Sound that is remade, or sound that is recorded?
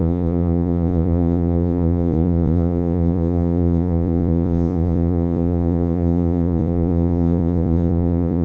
remade